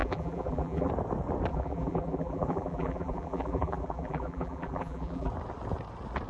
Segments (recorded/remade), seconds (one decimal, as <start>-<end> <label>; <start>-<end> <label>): 0.0-0.9 remade; 0.9-1.5 recorded; 1.5-5.3 remade; 5.3-6.3 recorded